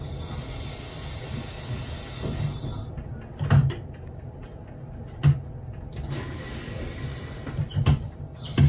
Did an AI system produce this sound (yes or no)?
no